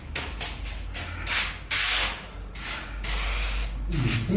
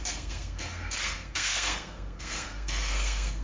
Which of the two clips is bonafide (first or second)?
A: first